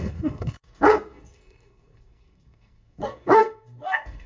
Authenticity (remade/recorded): remade